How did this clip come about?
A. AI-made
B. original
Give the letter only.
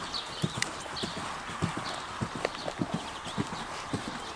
B